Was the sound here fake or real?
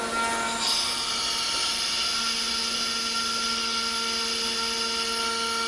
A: real